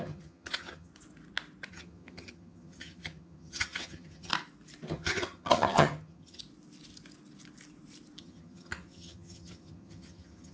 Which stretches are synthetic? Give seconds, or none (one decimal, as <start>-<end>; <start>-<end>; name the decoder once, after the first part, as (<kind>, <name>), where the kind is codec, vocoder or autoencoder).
0.0-0.9 (vocoder, HiFi-GAN); 1.7-4.3; 4.9-6.4; 8.2-10.5